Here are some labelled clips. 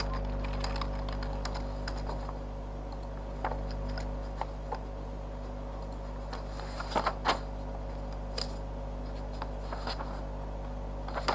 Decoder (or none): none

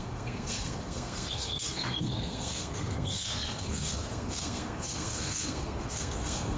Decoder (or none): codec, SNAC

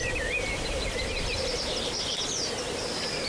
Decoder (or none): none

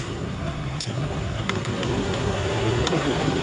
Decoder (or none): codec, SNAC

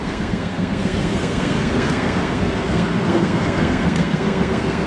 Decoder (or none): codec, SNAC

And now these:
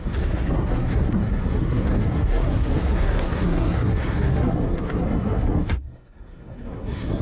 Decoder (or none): codec, SNAC